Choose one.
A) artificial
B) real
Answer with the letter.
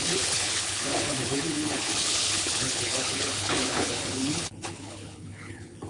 A